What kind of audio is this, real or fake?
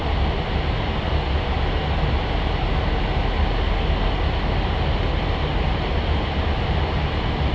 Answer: real